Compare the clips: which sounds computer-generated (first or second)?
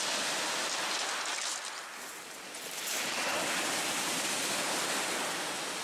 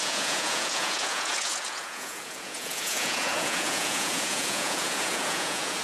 second